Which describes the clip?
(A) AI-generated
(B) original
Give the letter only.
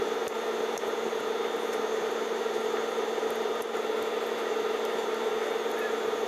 B